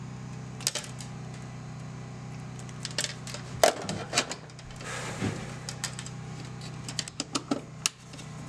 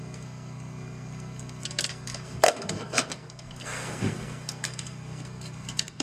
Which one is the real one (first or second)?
first